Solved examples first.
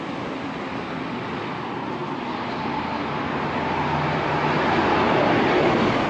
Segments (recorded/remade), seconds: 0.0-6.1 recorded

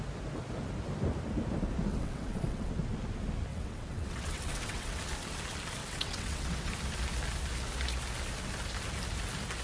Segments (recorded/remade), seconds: 0.0-1.9 recorded; 1.9-2.7 remade; 2.7-3.5 recorded; 3.5-5.0 remade; 5.0-5.8 recorded; 5.8-6.7 remade; 6.7-9.6 recorded